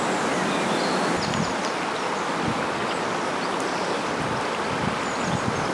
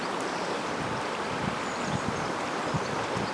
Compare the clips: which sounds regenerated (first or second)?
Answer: second